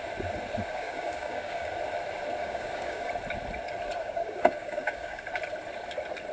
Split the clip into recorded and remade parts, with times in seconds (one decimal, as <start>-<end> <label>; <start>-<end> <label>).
0.0-0.7 recorded; 0.7-1.7 remade; 1.7-2.4 recorded; 2.4-3.1 remade; 3.1-4.0 recorded; 4.0-5.2 remade; 5.2-6.3 recorded